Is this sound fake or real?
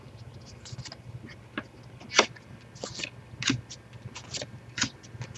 real